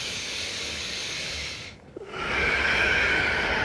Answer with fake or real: fake